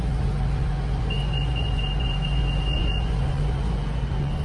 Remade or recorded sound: remade